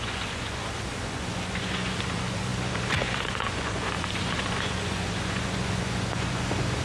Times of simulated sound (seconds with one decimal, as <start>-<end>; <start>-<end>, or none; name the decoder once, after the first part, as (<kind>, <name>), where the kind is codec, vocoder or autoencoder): 0.0-6.8 (vocoder, Vocos)